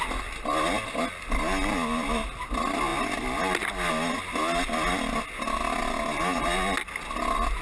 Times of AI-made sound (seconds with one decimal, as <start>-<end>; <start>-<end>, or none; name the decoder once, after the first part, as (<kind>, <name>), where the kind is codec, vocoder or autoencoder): none